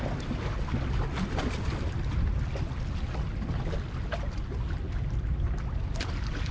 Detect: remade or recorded recorded